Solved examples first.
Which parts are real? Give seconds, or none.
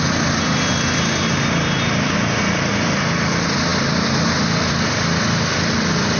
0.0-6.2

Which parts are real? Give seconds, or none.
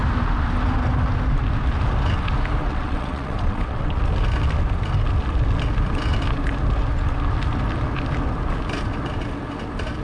0.0-2.6; 4.0-10.0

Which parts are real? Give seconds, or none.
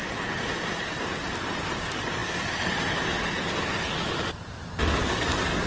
0.0-5.7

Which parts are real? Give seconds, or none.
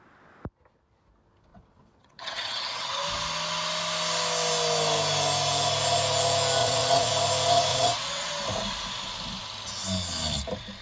0.0-1.5; 3.0-6.6; 7.1-7.7; 8.3-10.8